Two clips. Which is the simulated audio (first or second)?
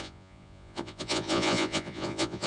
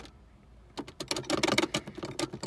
first